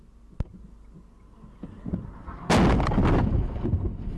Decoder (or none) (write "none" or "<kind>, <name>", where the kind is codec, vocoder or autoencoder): none